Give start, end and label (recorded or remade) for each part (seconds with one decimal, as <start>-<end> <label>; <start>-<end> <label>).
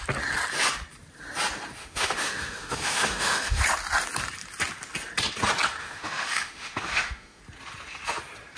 0.0-1.8 recorded; 1.8-3.6 remade; 3.6-5.8 recorded; 5.8-7.4 remade; 7.4-8.6 recorded